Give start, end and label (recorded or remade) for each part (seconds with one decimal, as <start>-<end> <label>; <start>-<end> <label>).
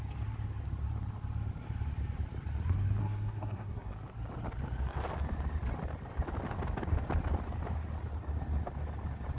0.0-3.0 recorded; 3.0-3.9 remade; 3.9-9.4 recorded